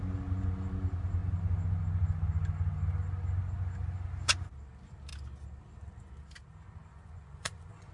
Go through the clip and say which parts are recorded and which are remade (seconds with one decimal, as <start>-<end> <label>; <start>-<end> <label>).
0.0-6.9 recorded; 6.9-7.9 remade